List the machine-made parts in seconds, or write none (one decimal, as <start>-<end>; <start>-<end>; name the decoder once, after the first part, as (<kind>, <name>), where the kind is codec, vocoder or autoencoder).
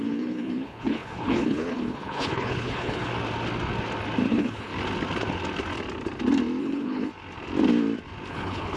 0.0-3.1 (codec, HILCodec); 4.3-4.7; 6.6-7.1; 8.3-8.8